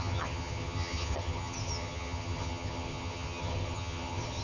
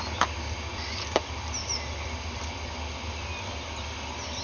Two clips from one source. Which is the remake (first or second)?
first